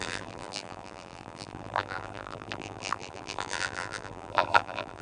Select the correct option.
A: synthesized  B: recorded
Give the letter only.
A